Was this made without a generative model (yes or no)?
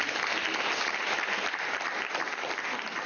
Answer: yes